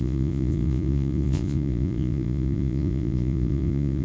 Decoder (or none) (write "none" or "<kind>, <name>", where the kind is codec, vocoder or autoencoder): vocoder, Vocos